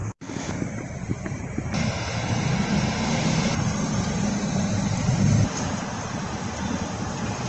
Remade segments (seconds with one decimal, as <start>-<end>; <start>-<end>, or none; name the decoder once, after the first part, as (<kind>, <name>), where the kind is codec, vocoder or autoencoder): none

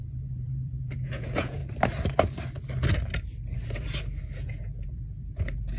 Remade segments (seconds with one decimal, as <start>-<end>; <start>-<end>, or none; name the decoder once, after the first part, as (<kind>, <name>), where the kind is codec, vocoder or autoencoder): 0.0-1.6 (vocoder, Vocos); 4.4-5.8

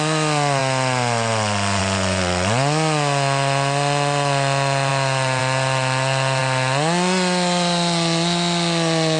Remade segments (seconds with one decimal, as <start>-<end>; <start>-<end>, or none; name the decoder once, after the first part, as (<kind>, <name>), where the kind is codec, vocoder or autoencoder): none

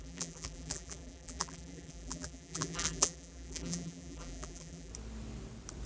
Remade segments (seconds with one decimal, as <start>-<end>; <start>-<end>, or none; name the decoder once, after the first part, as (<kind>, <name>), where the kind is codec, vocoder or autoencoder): 0.0-4.9 (vocoder, BigVGAN v2)

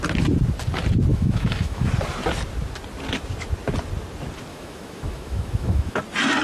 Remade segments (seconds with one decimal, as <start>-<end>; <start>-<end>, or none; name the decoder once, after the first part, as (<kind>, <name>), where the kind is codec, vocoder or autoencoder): 1.1-1.9 (autoencoder, DAC-VAE); 4.5-6.0

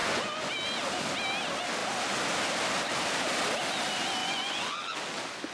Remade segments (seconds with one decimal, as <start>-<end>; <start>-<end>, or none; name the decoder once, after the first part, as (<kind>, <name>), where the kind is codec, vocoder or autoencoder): 0.0-0.5 (vocoder, Vocos); 4.2-4.8